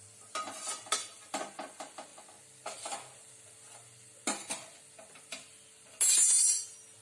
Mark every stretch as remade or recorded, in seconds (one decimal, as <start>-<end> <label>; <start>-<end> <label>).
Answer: 0.0-7.0 recorded

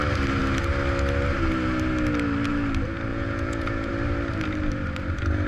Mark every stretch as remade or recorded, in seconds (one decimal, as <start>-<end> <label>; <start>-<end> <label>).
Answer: 0.0-3.1 recorded; 3.1-3.9 remade; 3.9-5.5 recorded

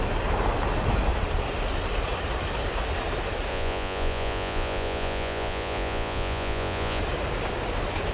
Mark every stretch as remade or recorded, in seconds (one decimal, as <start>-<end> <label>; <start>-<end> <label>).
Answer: 0.0-3.5 recorded; 3.5-7.0 remade; 7.0-8.1 recorded

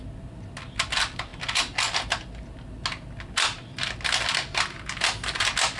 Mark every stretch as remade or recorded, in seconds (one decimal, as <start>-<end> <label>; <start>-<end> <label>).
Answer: 0.0-5.8 recorded

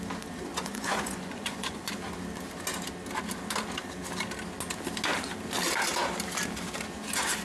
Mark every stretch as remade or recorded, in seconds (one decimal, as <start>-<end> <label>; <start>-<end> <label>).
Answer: 0.0-0.5 recorded; 0.5-1.9 remade; 1.9-7.4 recorded